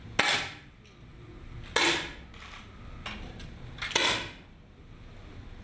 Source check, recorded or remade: recorded